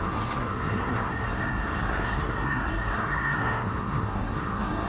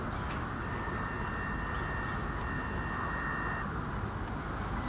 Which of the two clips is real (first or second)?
second